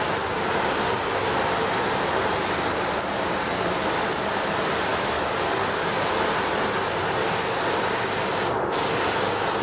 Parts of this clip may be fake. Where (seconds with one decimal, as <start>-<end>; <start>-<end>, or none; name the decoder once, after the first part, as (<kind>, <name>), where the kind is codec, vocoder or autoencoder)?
none